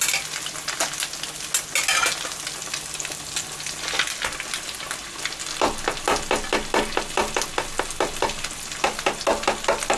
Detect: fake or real real